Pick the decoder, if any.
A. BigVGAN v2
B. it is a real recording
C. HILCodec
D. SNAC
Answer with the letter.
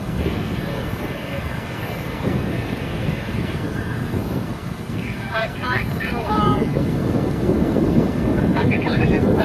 D